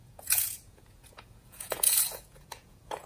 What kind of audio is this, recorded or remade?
remade